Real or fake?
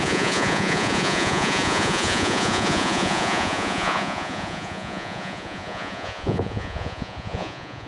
fake